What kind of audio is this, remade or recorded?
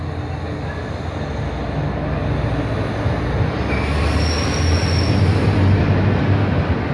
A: recorded